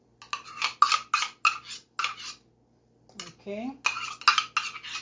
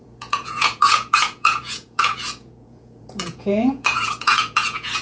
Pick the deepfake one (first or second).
second